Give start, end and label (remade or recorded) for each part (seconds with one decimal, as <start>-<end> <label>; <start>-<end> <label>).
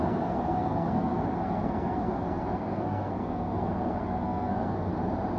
0.0-4.9 remade; 4.9-5.4 recorded